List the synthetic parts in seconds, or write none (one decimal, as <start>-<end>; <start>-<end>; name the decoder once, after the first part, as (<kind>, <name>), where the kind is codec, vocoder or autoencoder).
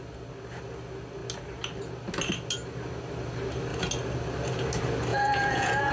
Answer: 5.1-5.9 (vocoder, Vocos)